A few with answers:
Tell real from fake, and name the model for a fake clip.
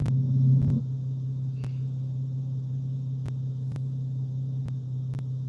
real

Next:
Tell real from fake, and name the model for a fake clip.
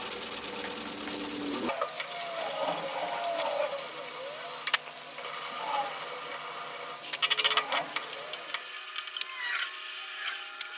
real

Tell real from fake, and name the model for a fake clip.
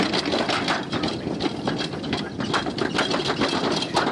real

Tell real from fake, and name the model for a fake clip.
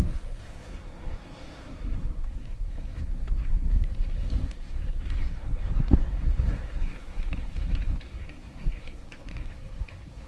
fake, codec, SNAC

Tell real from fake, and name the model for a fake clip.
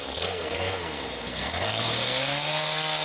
fake, codec, SNAC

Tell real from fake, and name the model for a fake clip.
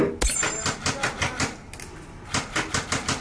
real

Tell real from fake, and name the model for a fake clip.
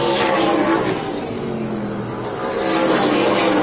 real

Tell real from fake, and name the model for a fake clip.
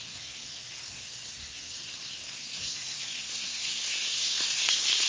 fake, codec, SNAC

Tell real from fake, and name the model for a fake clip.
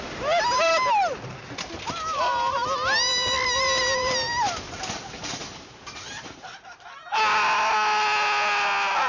real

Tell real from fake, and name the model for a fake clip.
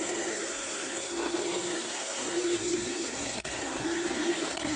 fake, codec, SNAC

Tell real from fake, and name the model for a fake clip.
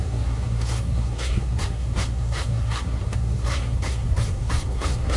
fake, codec, SNAC